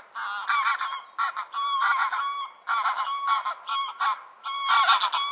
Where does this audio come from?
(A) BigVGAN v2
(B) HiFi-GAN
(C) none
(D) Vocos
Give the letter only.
C